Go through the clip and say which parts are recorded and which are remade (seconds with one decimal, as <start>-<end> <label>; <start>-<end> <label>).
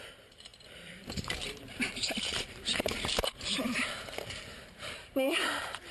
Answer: 0.0-5.9 remade